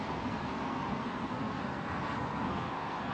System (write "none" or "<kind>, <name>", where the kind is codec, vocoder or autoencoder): codec, SNAC